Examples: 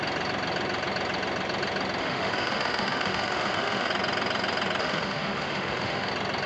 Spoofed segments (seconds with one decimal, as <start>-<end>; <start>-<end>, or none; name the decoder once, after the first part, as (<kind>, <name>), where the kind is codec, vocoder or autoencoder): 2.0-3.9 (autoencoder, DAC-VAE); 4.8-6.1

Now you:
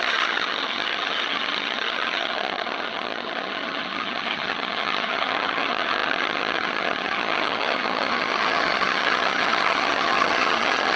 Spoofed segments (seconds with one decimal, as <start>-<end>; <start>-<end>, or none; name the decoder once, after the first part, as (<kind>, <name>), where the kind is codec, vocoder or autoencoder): 0.0-11.0 (vocoder, HiFi-GAN)

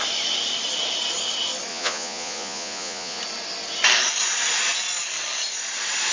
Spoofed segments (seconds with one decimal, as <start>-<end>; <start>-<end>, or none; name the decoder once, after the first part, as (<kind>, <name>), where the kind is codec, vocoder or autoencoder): 1.7-3.2 (vocoder, Vocos)